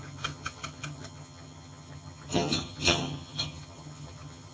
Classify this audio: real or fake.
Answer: fake